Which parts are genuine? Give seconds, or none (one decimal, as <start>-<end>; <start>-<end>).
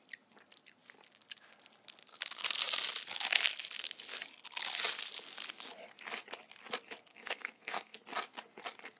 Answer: 0.0-7.1; 8.0-9.0